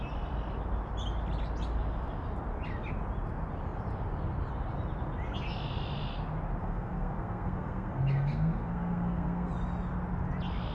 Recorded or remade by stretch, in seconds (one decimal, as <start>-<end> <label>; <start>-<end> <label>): 0.0-6.6 recorded; 6.6-9.5 remade; 9.5-10.7 recorded